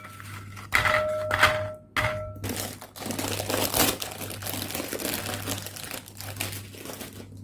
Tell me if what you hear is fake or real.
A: real